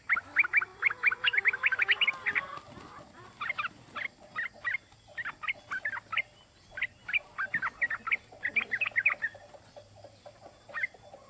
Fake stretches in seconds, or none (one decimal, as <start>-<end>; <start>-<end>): none